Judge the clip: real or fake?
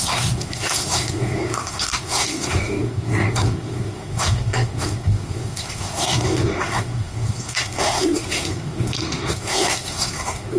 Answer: fake